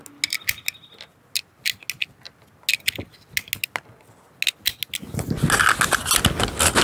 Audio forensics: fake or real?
real